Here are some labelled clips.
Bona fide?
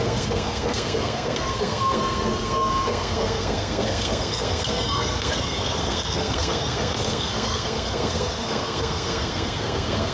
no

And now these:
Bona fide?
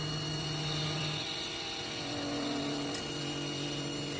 yes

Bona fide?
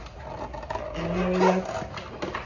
yes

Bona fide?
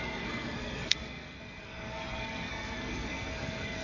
no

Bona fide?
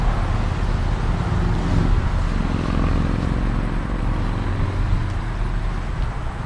yes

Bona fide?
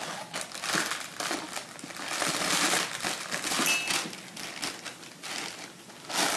yes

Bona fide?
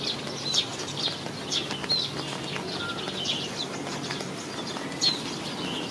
yes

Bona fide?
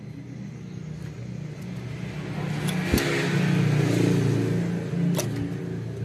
yes